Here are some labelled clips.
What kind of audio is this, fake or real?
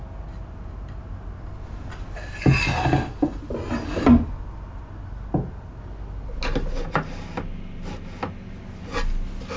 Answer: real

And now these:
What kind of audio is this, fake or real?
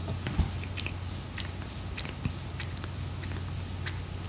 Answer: real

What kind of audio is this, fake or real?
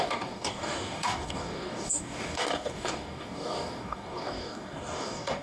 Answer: fake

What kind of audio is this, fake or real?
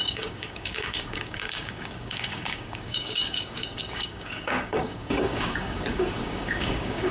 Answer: fake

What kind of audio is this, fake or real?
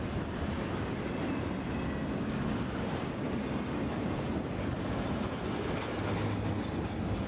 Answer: real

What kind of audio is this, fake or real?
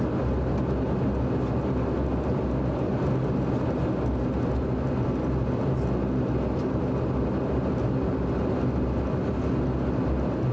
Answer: real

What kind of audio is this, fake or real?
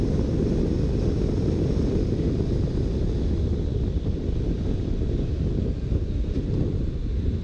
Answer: real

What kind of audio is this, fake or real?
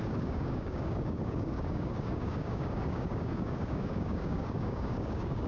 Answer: fake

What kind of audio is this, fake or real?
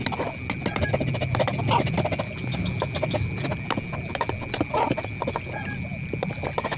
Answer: real